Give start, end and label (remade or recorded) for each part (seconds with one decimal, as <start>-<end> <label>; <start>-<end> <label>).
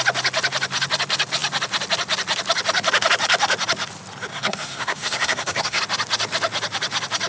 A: 0.0-4.3 recorded; 4.3-5.8 remade; 5.8-7.3 recorded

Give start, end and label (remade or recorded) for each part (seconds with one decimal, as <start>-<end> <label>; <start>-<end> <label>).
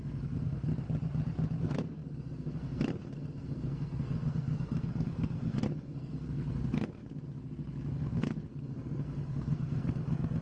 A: 0.0-0.7 remade; 0.7-1.6 recorded; 1.6-7.4 remade; 7.4-7.9 recorded; 7.9-10.4 remade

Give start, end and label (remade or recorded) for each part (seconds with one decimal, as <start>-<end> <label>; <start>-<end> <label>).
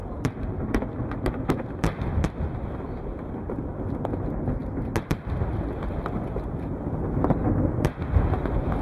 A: 0.0-8.8 recorded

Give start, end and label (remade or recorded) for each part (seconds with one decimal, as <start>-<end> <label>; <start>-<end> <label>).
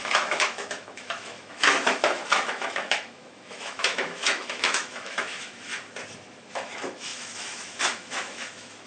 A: 0.0-5.7 remade; 5.7-6.4 recorded; 6.4-8.9 remade